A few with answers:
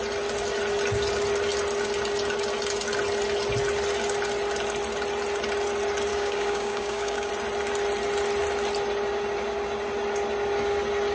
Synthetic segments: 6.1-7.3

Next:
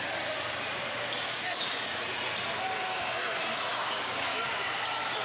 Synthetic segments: 3.7-4.4

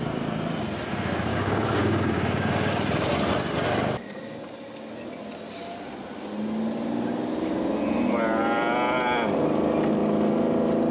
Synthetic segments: 1.3-2.7

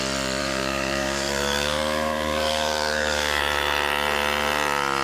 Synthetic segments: 0.4-3.4

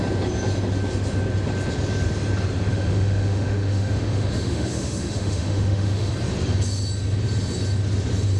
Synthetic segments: 2.7-6.1

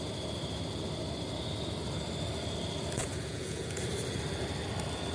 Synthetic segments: 3.0-3.8

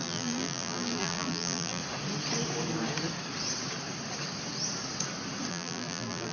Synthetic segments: 0.0-1.8; 5.5-6.3